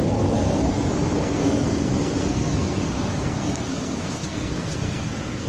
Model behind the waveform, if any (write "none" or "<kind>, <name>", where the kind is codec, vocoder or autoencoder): codec, SNAC